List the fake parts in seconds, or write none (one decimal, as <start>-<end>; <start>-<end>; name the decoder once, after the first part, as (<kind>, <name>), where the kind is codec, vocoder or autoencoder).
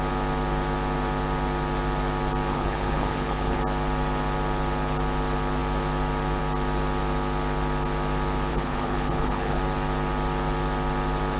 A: 2.5-3.6 (codec, HILCodec); 8.5-9.6